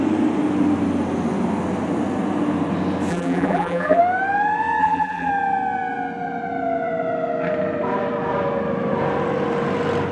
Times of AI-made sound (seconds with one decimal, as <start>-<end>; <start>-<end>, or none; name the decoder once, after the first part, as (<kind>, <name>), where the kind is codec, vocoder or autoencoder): 3.1-4.0 (vocoder, BigVGAN v2); 4.8-5.3